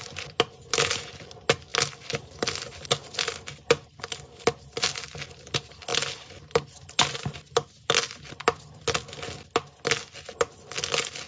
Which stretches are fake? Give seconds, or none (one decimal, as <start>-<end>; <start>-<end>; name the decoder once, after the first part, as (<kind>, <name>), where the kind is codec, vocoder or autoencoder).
none